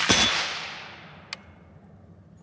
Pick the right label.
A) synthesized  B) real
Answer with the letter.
B